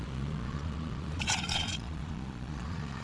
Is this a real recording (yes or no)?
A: no